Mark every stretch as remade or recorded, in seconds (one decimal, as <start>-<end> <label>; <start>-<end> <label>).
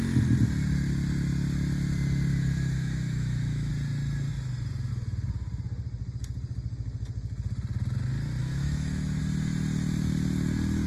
0.0-2.3 recorded; 2.3-3.7 remade; 3.7-8.4 recorded; 8.4-9.2 remade; 9.2-10.9 recorded